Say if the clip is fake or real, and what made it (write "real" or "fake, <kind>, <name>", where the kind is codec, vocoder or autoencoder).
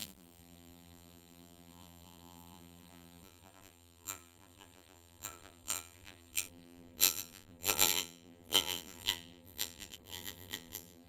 fake, vocoder, BigVGAN v2